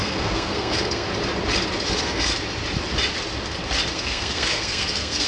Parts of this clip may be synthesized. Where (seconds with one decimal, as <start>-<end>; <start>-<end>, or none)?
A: 0.0-1.1; 1.9-2.3; 3.9-5.3